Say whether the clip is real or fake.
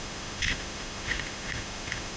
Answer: fake